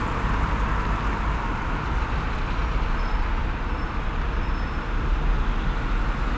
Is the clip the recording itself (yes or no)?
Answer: yes